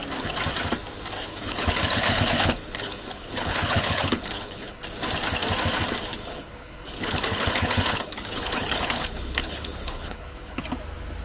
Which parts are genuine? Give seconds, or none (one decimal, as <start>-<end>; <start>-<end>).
0.0-1.3; 4.8-6.1; 10.6-11.2